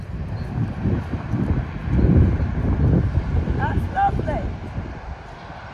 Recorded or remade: recorded